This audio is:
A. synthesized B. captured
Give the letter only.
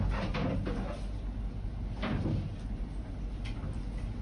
B